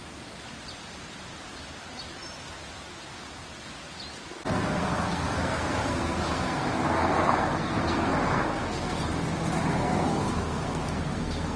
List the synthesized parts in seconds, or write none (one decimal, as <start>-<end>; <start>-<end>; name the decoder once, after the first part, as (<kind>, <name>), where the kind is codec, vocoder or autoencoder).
4.5-9.1 (codec, SNAC); 9.7-11.6